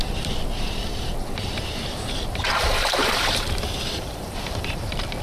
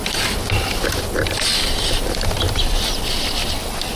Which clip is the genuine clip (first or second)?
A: second